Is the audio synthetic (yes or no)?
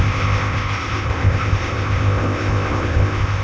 yes